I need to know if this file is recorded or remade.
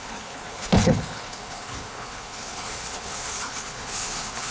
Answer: remade